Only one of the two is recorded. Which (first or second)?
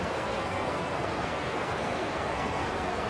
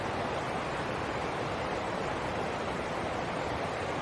second